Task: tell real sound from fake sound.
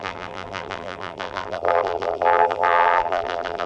fake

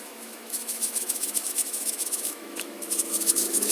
fake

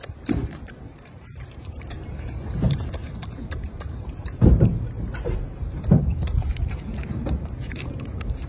fake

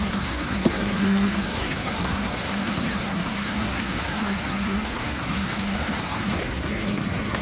fake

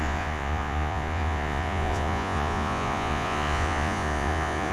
fake